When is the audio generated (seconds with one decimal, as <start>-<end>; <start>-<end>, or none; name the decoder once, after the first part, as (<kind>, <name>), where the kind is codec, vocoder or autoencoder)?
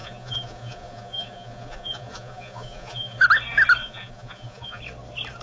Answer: 0.0-3.2 (vocoder, Vocos); 3.8-4.8